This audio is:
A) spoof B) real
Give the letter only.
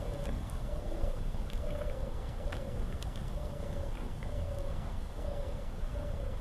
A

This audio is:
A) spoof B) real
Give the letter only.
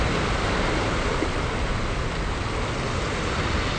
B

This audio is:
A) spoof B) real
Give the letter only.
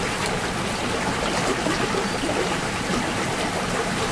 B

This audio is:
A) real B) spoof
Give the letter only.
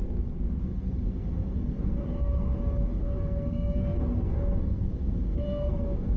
B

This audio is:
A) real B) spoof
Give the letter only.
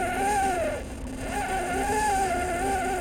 A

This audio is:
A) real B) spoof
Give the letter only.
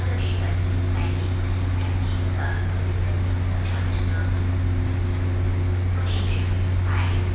A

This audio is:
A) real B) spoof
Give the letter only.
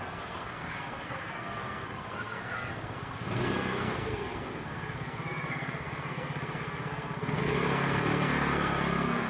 B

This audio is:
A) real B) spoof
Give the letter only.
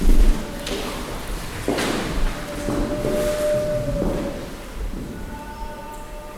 A